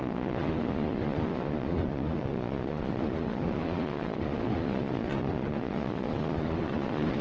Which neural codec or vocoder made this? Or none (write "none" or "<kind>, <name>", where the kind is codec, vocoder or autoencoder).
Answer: vocoder, Vocos